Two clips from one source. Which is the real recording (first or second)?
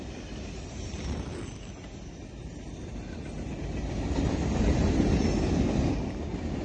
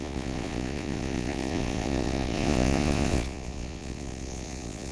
first